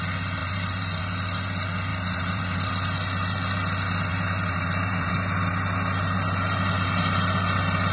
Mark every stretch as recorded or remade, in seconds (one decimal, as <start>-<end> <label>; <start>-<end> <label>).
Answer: 0.0-0.4 recorded; 0.4-1.0 remade; 1.0-1.9 recorded; 1.9-2.7 remade; 2.7-4.1 recorded; 4.1-5.1 remade; 5.1-7.9 recorded